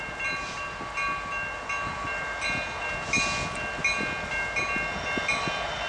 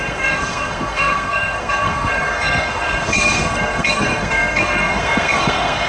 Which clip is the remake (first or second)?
second